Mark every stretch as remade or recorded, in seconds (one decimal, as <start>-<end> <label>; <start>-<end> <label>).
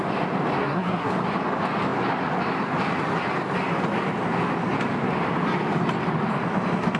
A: 0.0-0.6 recorded; 0.6-1.1 remade; 1.1-7.0 recorded